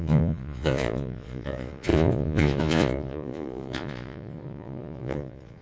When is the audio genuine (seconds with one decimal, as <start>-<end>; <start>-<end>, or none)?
none

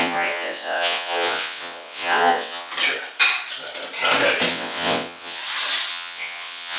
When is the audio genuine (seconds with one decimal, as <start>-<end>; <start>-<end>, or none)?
2.7-4.5; 5.4-5.9

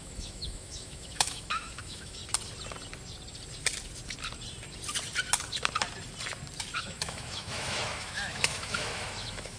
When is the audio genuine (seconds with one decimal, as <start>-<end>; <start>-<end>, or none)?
2.2-6.8

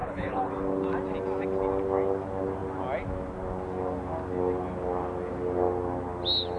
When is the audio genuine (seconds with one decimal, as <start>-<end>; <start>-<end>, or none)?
0.5-6.6

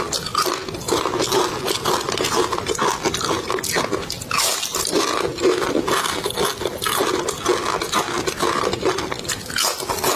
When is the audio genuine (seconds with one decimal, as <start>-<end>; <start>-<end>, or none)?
0.0-10.2